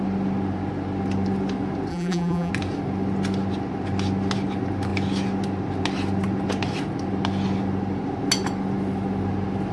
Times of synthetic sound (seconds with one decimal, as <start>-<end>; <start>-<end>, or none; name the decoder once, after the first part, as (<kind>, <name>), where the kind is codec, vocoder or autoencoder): 1.9-2.5 (vocoder, BigVGAN v2)